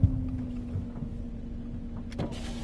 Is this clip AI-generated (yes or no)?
no